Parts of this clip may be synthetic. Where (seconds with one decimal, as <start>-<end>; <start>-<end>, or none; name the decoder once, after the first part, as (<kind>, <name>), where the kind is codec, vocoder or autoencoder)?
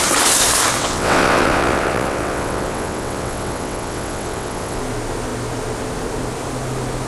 0.8-4.8 (vocoder, WaveNeXt)